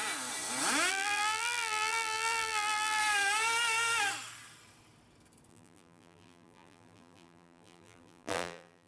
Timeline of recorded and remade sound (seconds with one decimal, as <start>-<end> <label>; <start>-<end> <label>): 0.0-0.9 recorded; 0.9-3.0 remade; 3.0-5.5 recorded; 5.5-8.9 remade